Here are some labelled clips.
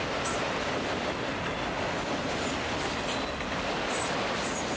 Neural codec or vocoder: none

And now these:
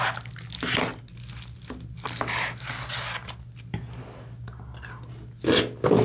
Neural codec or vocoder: none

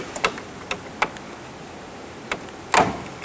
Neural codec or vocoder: none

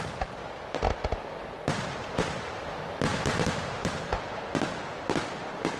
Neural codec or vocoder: none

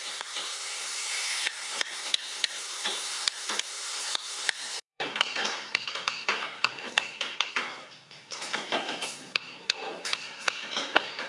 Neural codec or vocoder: codec, SNAC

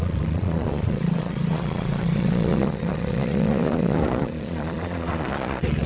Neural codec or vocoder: vocoder, Vocos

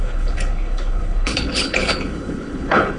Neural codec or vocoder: codec, HILCodec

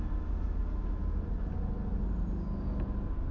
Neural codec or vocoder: none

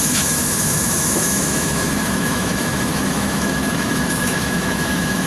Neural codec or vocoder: autoencoder, DAC-VAE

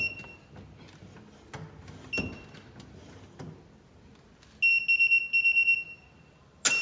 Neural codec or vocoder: none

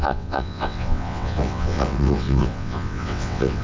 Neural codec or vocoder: vocoder, WaveNeXt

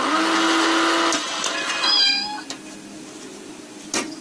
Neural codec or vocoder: none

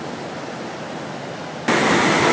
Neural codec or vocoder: none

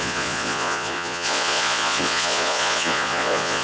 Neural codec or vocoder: vocoder, Vocos